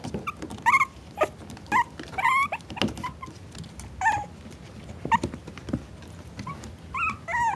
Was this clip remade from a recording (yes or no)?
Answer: no